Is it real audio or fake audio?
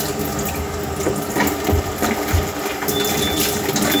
real